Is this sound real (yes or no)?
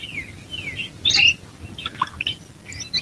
yes